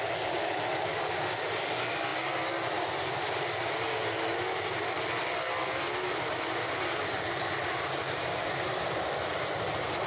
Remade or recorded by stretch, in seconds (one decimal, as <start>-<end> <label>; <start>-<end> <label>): 0.0-10.1 recorded